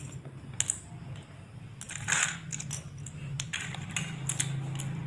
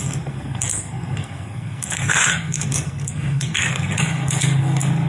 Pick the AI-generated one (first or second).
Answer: second